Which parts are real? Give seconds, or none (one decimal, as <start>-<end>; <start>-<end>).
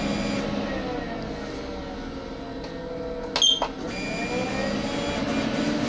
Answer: 0.0-5.9